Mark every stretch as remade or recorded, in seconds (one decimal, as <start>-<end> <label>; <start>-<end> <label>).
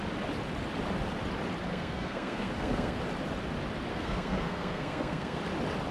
0.0-1.7 recorded; 1.7-3.0 remade; 3.0-3.9 recorded; 3.9-5.4 remade; 5.4-5.9 recorded